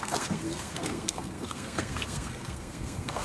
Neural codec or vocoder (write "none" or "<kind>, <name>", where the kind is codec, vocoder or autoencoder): codec, SNAC